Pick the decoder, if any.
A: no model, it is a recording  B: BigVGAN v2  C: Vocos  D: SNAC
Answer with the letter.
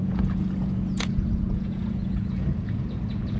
C